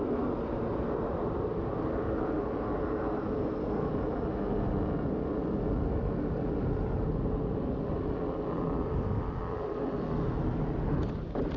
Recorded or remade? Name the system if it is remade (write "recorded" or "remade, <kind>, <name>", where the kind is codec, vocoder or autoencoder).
recorded